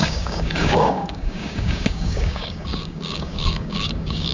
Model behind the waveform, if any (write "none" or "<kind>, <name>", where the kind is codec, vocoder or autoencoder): codec, DAC